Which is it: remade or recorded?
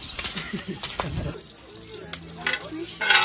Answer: recorded